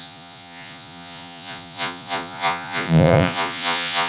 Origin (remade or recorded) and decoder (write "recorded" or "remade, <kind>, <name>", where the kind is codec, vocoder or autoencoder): remade, vocoder, Vocos